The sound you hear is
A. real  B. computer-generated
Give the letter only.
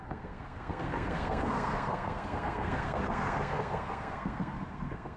B